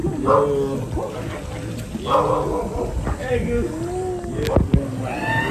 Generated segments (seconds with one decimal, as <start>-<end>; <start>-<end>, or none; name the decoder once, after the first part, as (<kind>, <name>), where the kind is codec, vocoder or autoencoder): none